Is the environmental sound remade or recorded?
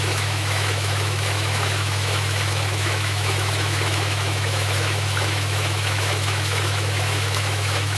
remade